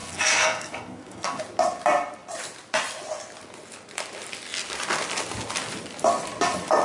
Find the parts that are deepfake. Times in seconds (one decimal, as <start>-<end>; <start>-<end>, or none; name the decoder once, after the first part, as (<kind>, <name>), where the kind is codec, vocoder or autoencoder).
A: 0.0-1.4 (codec, SNAC)

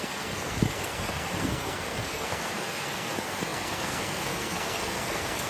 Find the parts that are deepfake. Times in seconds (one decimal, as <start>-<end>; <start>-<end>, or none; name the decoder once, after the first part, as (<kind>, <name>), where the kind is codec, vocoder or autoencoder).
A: 0.0-5.5 (codec, SNAC)

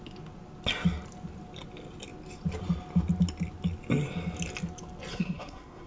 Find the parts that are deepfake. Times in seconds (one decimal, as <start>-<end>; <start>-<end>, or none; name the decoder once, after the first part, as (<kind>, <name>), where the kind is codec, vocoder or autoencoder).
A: 5.1-5.9 (codec, SNAC)

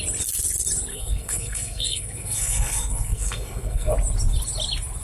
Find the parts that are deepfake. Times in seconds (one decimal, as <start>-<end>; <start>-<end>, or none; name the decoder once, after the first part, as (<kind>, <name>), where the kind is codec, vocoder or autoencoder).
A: 0.9-3.9 (codec, SNAC)

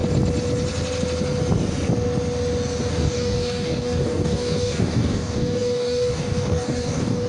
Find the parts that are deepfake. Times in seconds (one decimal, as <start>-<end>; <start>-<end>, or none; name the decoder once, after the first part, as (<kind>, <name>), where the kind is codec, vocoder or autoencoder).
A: 2.9-7.3 (codec, DAC)

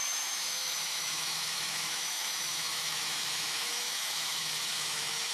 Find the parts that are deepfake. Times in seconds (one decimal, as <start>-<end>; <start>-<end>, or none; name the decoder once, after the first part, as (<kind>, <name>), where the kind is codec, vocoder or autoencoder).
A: 0.0-5.3 (autoencoder, DAC-VAE)

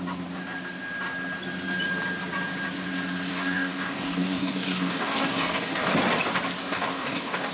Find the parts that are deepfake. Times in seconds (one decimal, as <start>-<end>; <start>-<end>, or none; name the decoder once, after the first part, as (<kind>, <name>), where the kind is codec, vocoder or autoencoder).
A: 3.3-5.9 (codec, DAC); 6.6-7.5